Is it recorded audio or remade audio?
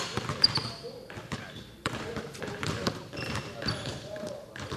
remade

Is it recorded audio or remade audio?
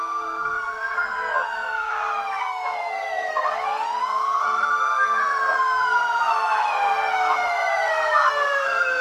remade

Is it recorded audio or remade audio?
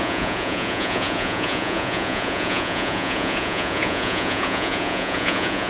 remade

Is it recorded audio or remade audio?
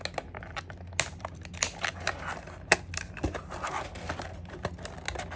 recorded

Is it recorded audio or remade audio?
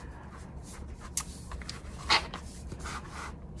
recorded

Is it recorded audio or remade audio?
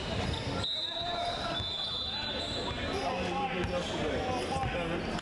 recorded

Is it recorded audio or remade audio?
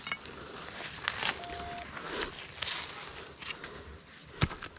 recorded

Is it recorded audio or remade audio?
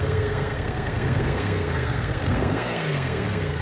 remade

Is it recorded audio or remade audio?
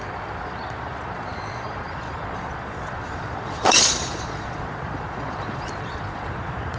remade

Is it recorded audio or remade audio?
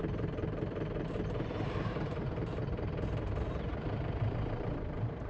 remade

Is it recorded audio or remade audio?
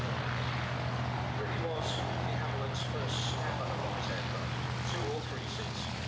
recorded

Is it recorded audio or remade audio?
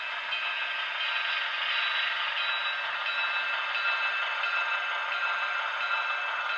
recorded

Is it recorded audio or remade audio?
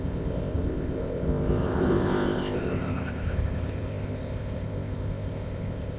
remade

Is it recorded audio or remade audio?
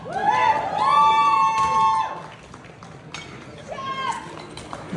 recorded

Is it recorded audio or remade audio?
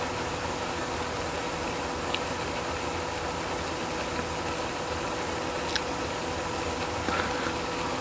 recorded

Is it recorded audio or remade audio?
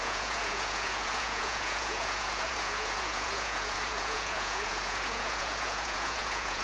remade